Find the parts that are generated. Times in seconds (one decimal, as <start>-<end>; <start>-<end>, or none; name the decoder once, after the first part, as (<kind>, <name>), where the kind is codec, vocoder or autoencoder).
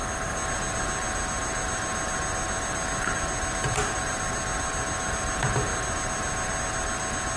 none